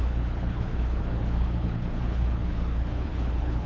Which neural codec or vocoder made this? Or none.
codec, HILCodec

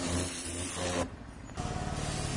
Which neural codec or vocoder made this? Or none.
none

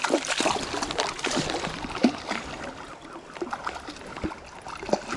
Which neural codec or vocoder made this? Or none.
none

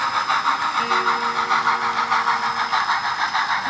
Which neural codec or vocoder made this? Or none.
none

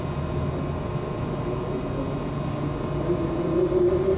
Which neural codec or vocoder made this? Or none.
none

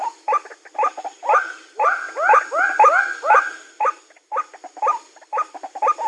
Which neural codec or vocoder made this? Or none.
none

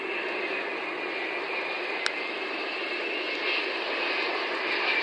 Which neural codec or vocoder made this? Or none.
none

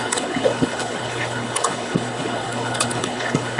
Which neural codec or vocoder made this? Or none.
codec, HILCodec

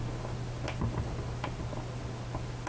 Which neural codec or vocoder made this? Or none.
none